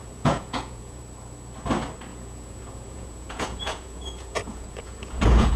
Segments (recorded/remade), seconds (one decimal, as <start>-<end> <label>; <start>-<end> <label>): 0.0-1.0 remade; 1.0-2.1 recorded; 2.1-5.6 remade